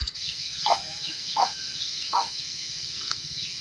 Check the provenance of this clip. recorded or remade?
remade